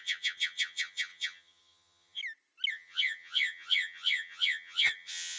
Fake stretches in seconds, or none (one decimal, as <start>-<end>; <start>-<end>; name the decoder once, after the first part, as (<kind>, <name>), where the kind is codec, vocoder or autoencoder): 0.0-2.2 (vocoder, HiFi-GAN); 2.7-5.4